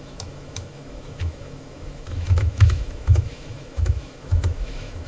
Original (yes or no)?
no